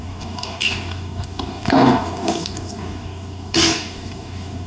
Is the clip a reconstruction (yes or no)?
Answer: yes